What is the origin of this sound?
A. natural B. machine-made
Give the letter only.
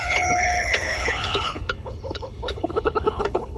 B